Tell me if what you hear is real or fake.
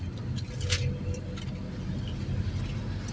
real